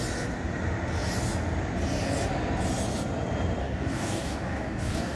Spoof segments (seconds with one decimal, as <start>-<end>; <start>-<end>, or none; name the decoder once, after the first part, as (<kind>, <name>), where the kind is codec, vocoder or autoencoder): 3.6-5.2 (codec, DAC)